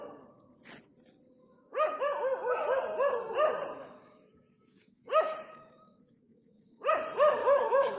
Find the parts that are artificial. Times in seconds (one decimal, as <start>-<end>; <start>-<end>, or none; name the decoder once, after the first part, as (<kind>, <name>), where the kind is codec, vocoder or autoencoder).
1.4-2.0 (autoencoder, DAC-VAE); 3.8-6.9; 7.4-8.0

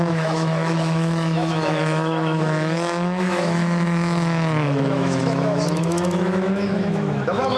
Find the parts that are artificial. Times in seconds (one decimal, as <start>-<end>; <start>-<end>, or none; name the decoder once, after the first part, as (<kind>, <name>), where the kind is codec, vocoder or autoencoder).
0.0-7.6 (autoencoder, DAC-VAE)

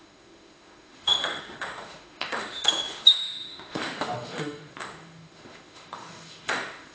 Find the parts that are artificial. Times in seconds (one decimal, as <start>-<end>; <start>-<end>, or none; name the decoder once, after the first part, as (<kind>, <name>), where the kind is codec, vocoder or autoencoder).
0.0-6.9 (autoencoder, DAC-VAE)

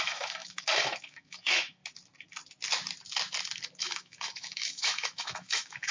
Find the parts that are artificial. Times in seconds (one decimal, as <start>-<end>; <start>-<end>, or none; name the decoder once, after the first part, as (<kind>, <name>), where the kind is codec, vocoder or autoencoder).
0.0-1.8 (autoencoder, DAC-VAE); 3.8-5.9

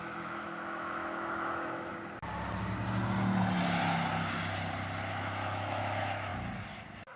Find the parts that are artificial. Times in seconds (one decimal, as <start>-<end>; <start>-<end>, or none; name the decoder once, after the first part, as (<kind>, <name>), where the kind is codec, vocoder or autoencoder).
0.0-1.9 (autoencoder, DAC-VAE); 5.1-6.3

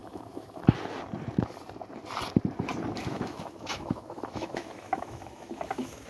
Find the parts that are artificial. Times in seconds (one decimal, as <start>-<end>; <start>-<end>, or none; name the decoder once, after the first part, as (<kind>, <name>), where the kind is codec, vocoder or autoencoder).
0.0-0.6 (autoencoder, DAC-VAE); 3.0-6.1